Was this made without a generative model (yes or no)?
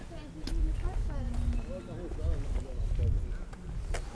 yes